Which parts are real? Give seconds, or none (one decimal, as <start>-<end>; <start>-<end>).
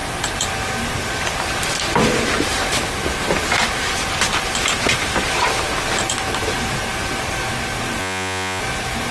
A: 0.0-8.0; 8.6-9.1